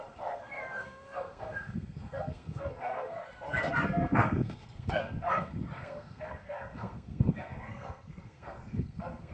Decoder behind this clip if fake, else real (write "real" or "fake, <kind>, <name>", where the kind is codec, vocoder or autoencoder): fake, codec, SNAC